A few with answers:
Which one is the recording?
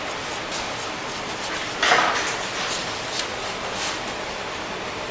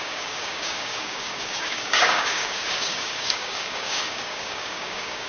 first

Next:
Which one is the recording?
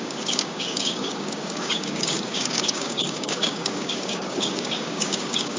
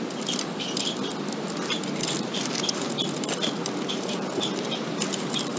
second